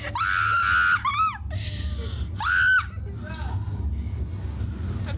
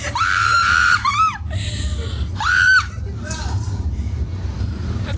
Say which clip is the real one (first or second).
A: first